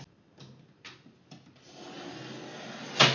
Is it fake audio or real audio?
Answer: real